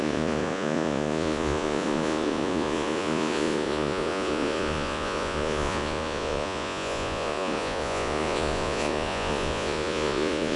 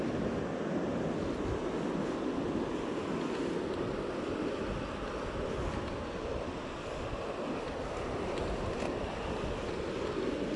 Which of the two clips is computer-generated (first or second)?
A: first